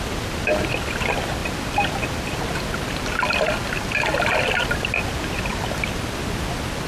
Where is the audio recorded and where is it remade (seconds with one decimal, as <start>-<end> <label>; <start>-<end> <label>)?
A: 0.0-6.9 recorded